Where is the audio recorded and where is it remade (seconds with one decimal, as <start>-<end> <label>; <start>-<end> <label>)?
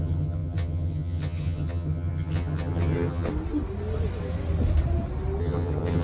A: 0.0-3.3 remade; 3.3-5.4 recorded; 5.4-6.0 remade